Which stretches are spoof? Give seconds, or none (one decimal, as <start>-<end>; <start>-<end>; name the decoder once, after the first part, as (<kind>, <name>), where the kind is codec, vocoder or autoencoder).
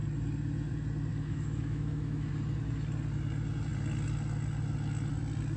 1.1-2.3 (autoencoder, DAC-VAE)